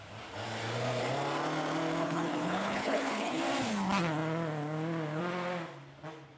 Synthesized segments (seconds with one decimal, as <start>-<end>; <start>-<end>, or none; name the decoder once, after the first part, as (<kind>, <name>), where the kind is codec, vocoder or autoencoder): 2.0-3.4 (codec, HILCodec)